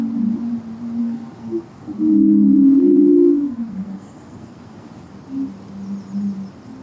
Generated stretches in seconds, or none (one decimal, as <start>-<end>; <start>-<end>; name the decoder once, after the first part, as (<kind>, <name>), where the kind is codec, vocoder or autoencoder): 1.0-5.1 (codec, SNAC)